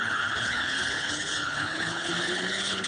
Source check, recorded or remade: remade